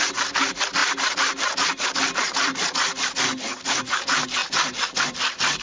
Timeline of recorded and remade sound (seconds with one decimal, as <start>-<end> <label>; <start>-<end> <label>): 0.0-5.6 recorded